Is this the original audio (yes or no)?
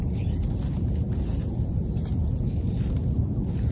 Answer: yes